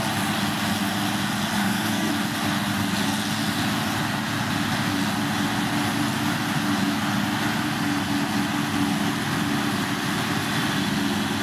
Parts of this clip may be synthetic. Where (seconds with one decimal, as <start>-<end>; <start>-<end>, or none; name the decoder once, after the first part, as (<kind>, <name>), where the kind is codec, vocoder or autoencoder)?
1.6-2.1 (codec, SNAC)